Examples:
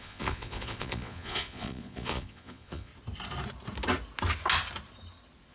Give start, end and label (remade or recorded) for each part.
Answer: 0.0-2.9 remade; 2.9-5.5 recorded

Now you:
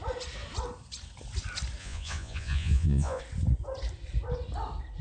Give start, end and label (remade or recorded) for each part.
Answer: 0.0-1.8 recorded; 1.8-3.2 remade; 3.2-5.0 recorded

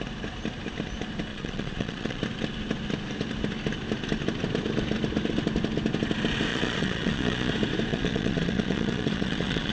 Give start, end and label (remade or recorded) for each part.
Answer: 0.0-1.3 recorded; 1.3-2.2 remade; 2.2-6.5 recorded; 6.5-7.5 remade; 7.5-7.9 recorded; 7.9-9.7 remade

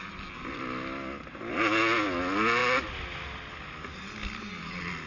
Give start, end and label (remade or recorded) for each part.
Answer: 0.0-5.1 recorded

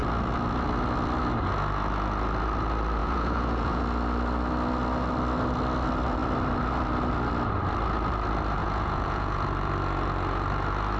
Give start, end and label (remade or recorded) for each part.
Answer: 0.0-3.0 recorded; 3.0-3.8 remade; 3.8-8.6 recorded; 8.6-9.4 remade; 9.4-11.0 recorded